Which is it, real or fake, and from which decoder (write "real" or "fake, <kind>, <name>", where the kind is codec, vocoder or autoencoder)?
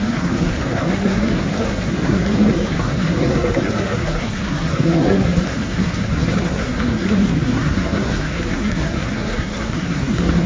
fake, codec, SNAC